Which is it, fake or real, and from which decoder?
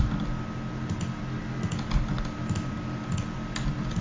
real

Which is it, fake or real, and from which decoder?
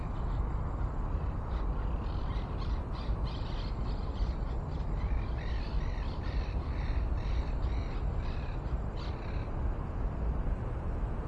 real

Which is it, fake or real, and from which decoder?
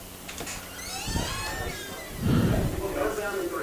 real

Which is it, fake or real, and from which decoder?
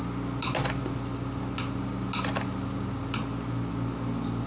real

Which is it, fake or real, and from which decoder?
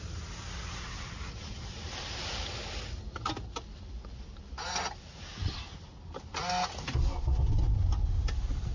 real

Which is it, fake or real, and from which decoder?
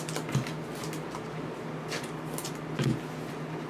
real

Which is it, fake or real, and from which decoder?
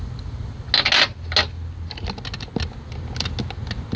real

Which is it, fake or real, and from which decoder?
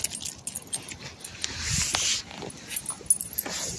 real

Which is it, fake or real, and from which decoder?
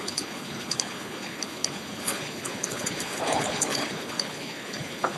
fake, codec, HILCodec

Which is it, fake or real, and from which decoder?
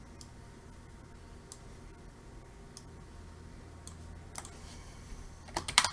real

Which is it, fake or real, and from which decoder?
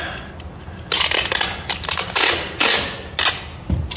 real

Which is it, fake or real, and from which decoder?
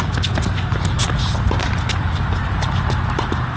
real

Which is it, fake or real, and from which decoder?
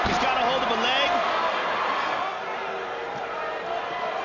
real